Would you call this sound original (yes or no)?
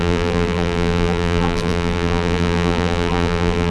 no